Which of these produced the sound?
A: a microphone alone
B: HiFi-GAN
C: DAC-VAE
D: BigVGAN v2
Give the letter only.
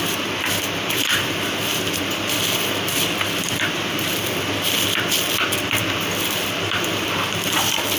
D